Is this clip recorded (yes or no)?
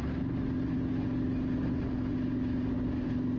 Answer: yes